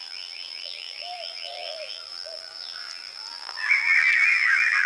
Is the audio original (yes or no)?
no